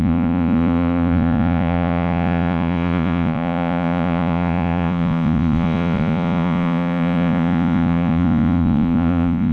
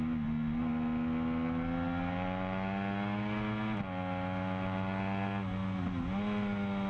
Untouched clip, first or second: second